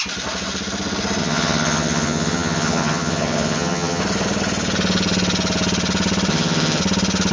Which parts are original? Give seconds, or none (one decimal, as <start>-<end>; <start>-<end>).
0.0-1.2; 4.0-6.3; 6.8-7.3